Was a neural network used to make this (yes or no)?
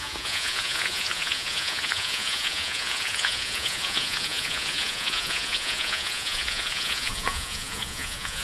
yes